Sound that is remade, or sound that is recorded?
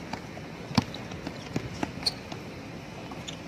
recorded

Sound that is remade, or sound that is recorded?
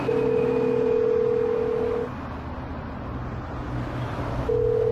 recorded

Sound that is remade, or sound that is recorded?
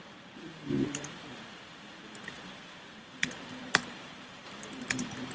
remade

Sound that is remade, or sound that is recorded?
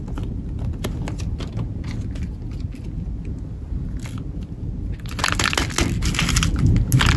recorded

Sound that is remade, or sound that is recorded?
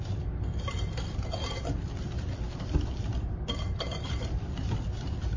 remade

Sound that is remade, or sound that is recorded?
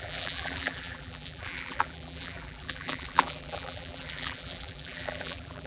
remade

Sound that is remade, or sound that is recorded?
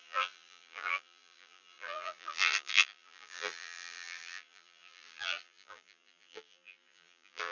remade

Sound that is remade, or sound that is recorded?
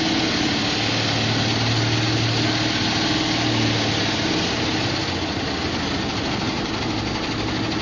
recorded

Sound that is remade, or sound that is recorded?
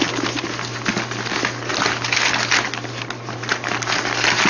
recorded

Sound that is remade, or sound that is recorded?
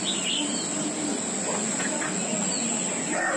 recorded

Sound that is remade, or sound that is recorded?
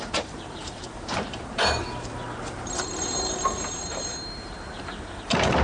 remade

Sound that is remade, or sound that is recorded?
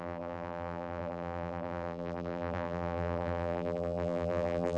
remade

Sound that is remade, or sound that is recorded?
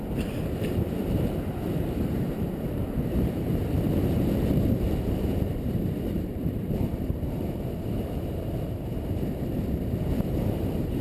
remade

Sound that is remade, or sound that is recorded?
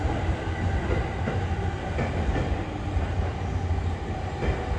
recorded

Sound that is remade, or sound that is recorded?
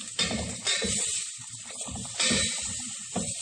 remade